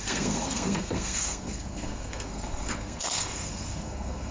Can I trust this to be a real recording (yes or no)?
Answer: no